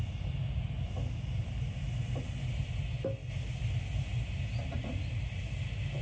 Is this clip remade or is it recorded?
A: recorded